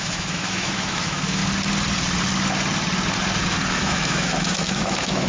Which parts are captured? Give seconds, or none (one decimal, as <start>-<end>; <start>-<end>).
1.4-3.7